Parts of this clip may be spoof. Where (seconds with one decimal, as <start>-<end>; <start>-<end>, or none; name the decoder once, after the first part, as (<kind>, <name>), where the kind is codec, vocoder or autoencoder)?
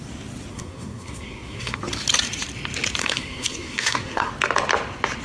0.5-1.8 (codec, SNAC); 3.0-4.3